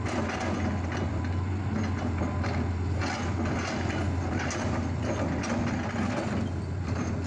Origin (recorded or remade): recorded